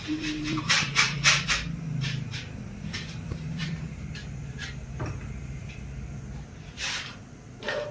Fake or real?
fake